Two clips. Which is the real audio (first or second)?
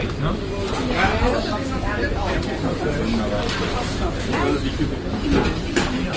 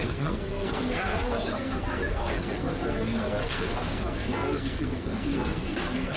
first